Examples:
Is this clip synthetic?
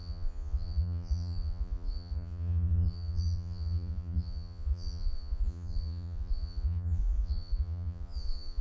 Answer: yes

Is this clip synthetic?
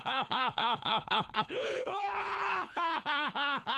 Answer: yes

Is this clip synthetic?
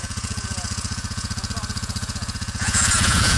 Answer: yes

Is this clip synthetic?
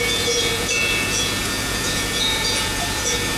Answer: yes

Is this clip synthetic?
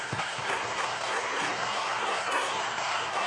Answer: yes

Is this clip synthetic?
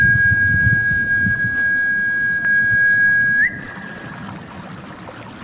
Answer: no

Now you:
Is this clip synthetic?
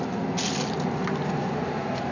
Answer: no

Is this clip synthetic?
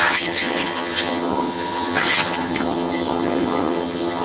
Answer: yes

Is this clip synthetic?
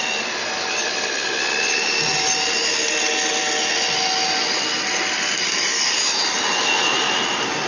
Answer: no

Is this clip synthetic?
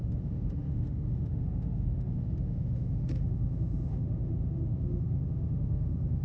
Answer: yes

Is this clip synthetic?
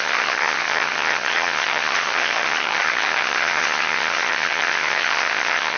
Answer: yes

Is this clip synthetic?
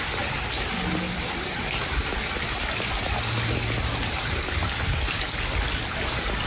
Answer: no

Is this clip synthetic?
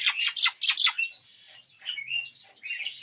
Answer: no